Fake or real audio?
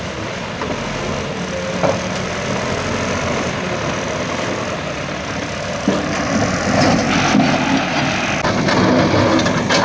real